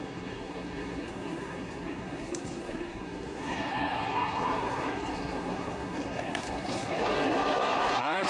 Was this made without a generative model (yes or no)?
no